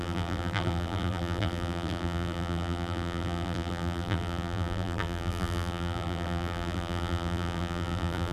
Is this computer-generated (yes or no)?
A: yes